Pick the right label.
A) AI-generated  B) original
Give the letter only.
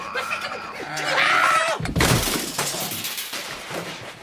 A